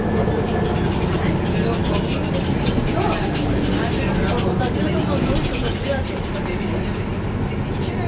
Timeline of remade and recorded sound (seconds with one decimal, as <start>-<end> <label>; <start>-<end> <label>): 0.0-5.6 recorded; 5.6-6.6 remade; 6.6-8.1 recorded